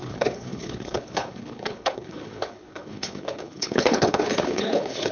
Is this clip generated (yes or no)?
yes